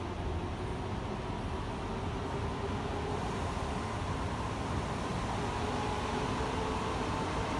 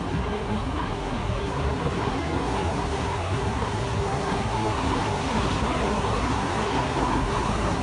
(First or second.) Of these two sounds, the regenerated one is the second